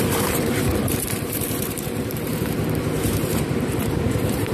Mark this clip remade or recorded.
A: remade